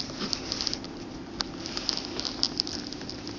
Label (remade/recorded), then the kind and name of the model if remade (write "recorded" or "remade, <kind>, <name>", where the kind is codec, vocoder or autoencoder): recorded